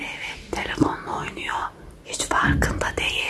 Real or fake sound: real